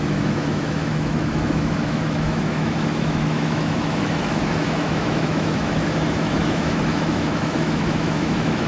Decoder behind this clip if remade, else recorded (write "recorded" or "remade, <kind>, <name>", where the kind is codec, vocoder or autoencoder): remade, autoencoder, DAC-VAE